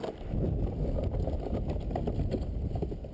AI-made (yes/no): no